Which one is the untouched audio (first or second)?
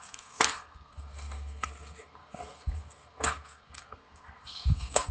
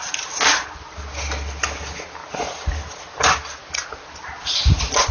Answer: second